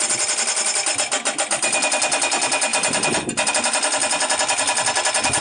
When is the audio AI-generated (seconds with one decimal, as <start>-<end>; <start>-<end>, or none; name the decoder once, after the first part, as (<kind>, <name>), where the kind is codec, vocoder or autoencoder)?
none